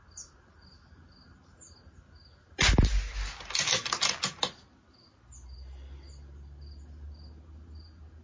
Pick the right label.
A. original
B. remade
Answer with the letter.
A